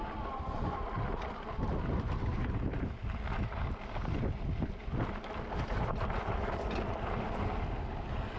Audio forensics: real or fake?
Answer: real